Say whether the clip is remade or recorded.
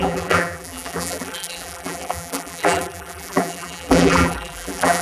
remade